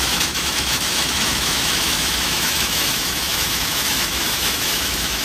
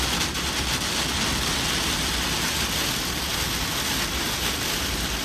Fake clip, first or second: first